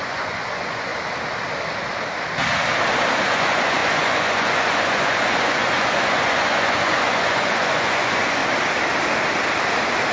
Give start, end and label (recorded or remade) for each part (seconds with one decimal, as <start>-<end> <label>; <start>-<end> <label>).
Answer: 0.0-0.9 remade; 0.9-3.3 recorded; 3.3-8.4 remade; 8.4-10.1 recorded